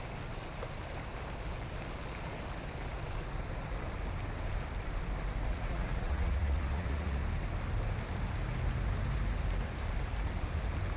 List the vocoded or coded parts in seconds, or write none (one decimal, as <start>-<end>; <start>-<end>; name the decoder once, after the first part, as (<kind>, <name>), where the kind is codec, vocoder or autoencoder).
5.5-7.2 (vocoder, Vocos)